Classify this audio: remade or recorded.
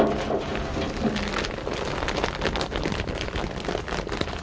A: recorded